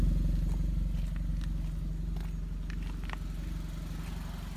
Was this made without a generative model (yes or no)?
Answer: yes